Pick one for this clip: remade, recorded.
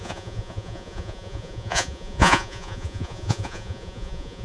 remade